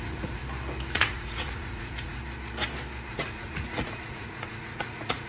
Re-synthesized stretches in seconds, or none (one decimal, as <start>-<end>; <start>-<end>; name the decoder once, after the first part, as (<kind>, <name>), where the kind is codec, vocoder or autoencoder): 0.0-0.4 (vocoder, Vocos); 0.9-2.2; 3.1-5.3